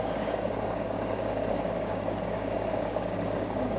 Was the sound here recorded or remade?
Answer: remade